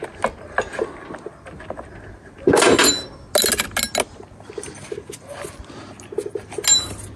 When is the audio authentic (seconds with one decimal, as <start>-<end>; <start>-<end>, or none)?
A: 0.0-7.2